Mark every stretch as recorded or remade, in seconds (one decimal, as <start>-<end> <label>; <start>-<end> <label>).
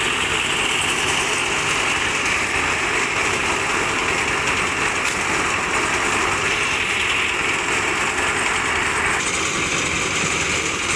0.0-11.0 recorded